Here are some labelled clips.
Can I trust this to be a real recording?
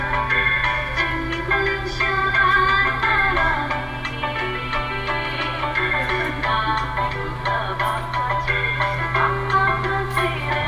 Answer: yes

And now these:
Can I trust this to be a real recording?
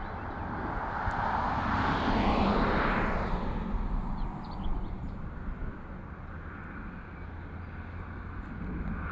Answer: yes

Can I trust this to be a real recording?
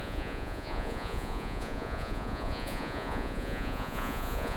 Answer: no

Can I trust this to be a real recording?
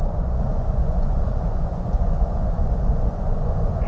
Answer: no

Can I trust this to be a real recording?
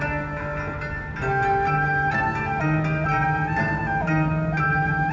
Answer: no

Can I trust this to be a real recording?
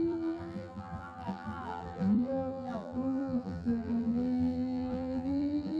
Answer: no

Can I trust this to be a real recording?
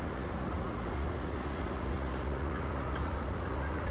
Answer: no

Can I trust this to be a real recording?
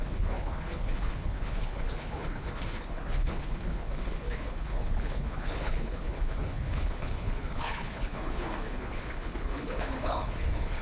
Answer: no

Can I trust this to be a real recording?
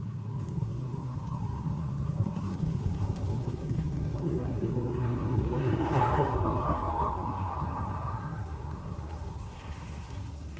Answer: no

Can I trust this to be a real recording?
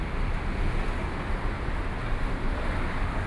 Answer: yes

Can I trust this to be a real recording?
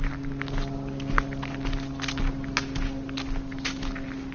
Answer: yes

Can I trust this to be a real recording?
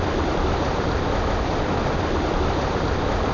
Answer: yes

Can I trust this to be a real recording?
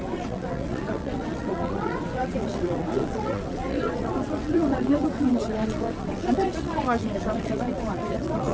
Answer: no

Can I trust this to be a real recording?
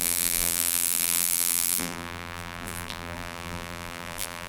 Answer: no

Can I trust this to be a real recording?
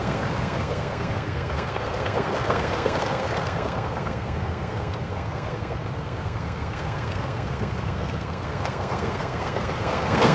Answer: no